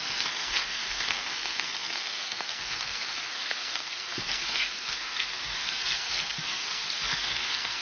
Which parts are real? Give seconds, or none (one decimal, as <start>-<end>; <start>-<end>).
none